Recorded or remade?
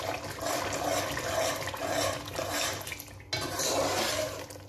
recorded